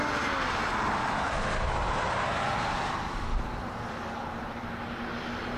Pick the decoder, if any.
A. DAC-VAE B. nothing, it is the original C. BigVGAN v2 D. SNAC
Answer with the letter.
B